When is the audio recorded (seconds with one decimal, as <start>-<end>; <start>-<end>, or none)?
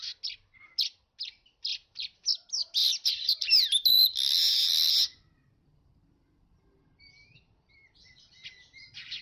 0.0-2.8; 6.8-9.2